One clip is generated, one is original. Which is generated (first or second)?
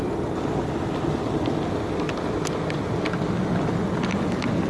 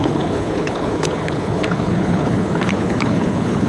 second